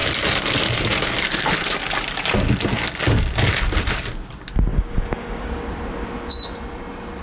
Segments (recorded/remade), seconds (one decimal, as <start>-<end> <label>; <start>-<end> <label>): 0.0-4.7 recorded; 4.7-5.5 remade; 5.5-7.2 recorded